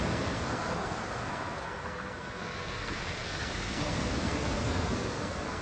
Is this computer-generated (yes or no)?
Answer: yes